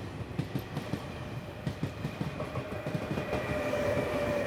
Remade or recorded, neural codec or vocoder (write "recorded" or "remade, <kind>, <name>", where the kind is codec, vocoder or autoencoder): remade, vocoder, BigVGAN v2